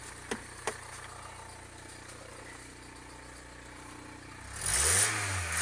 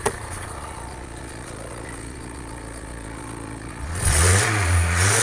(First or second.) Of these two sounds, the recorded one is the first